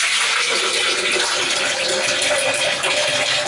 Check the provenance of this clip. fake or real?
real